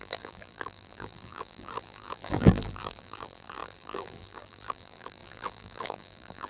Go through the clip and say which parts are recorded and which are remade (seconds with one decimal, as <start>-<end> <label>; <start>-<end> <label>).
0.0-6.5 remade